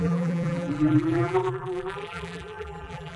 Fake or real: fake